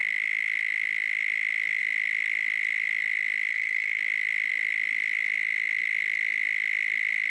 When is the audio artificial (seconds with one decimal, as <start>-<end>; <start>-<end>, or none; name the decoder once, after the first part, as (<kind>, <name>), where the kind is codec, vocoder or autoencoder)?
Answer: 3.5-4.0 (codec, SNAC)